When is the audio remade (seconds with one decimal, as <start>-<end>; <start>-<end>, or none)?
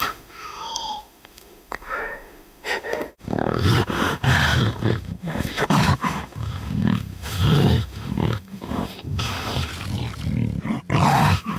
0.0-9.7; 11.1-11.6